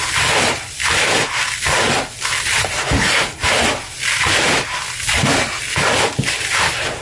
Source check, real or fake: fake